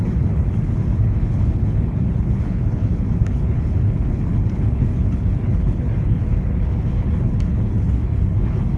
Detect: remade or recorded remade